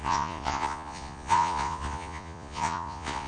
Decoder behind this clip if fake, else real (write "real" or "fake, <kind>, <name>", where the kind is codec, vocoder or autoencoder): fake, vocoder, Vocos